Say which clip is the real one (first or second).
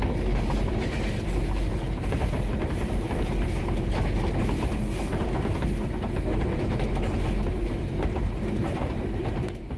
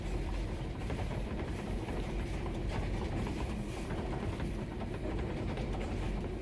first